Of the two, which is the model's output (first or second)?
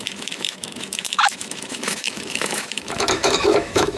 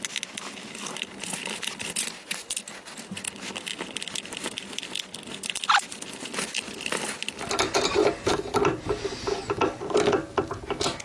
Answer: first